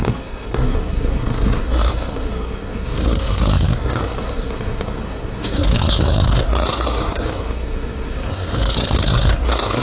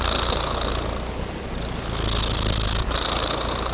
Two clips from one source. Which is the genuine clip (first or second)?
second